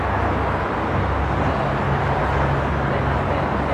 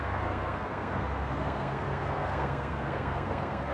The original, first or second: first